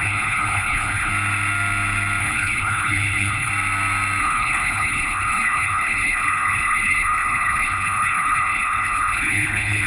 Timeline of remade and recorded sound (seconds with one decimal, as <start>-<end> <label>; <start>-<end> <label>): 0.0-1.1 remade; 1.1-2.2 recorded; 2.2-3.5 remade; 3.5-4.2 recorded; 4.2-9.9 remade